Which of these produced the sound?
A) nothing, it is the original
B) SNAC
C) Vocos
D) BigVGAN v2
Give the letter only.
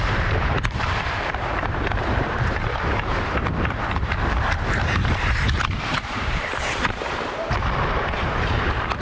D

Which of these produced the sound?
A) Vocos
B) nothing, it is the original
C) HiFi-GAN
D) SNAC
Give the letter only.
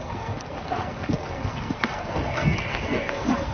D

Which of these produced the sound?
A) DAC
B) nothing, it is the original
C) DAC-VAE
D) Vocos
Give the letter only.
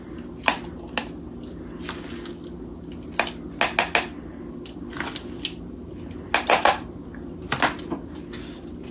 B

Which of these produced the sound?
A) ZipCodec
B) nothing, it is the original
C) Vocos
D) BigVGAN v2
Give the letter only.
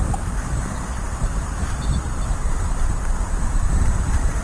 D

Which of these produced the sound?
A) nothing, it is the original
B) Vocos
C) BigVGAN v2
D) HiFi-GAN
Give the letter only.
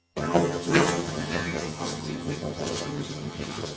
D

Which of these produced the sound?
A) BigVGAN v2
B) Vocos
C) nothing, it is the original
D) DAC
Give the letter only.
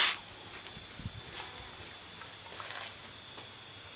C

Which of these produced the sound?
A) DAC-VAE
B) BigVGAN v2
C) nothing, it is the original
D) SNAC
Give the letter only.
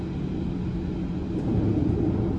C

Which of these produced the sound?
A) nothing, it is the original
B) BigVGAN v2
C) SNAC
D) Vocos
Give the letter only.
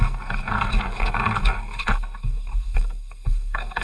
C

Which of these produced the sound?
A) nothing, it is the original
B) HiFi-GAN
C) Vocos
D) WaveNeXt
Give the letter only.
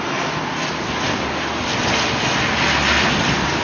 A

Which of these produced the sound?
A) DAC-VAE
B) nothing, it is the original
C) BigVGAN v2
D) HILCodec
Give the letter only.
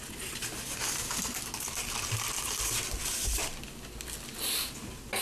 B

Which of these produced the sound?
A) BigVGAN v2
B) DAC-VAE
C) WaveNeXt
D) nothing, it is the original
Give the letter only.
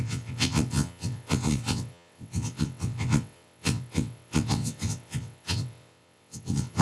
C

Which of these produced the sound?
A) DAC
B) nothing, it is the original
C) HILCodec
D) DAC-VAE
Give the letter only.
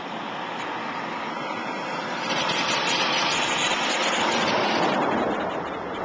B